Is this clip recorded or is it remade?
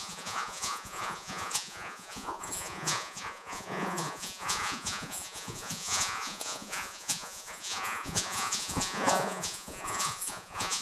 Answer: remade